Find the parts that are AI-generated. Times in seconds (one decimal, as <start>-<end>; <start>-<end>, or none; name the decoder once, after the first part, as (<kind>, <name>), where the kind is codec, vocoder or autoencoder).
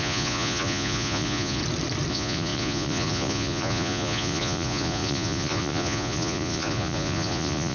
0.0-1.6 (vocoder, Vocos); 2.1-7.7